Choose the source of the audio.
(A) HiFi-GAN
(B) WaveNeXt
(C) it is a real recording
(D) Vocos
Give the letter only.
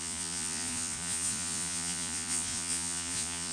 D